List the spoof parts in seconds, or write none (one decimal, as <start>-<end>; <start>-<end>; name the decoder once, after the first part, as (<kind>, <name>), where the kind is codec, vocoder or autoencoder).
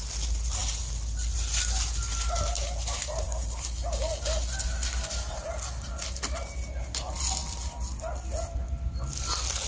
none